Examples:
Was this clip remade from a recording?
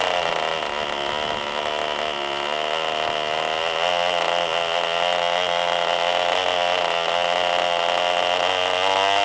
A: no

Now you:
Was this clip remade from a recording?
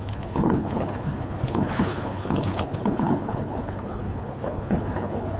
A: yes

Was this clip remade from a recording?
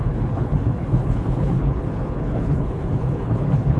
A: yes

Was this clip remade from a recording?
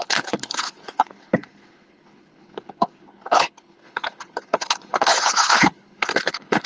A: yes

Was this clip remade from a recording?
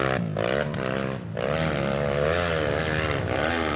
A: no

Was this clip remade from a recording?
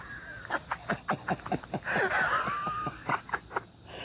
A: no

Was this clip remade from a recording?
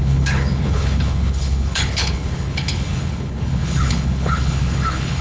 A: yes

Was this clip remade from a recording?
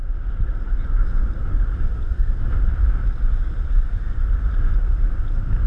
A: no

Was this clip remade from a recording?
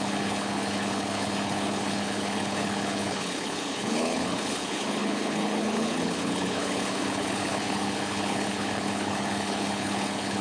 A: yes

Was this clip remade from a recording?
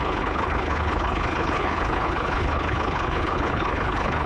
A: yes